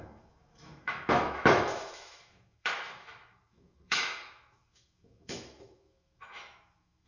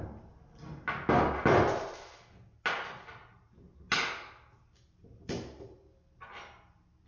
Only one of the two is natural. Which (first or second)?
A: second